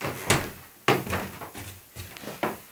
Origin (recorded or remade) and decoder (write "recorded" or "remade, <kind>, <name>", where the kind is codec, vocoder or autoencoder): recorded